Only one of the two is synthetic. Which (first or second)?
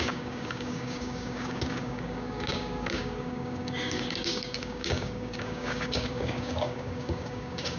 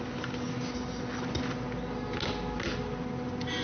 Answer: first